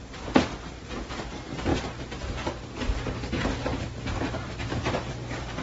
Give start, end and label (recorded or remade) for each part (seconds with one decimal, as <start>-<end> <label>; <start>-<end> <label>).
0.0-1.7 recorded; 1.7-4.6 remade; 4.6-5.6 recorded